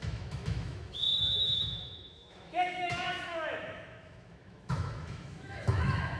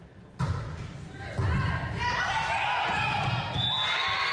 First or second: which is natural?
second